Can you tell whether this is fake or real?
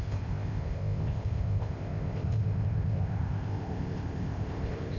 fake